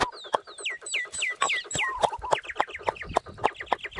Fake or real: real